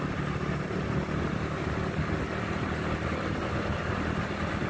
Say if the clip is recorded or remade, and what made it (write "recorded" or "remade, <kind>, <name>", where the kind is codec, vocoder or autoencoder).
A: recorded